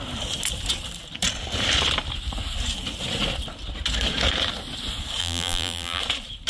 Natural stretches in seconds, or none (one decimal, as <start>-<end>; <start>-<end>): 0.0-5.2; 6.0-6.5

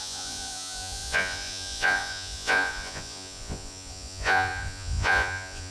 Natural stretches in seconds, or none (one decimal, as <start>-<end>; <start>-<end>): none

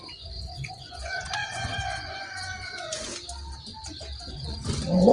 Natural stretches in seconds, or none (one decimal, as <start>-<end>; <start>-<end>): 3.1-4.2

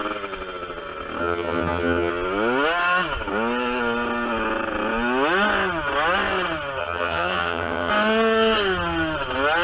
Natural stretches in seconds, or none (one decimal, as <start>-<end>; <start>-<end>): 0.0-1.2; 2.1-6.8; 7.9-9.6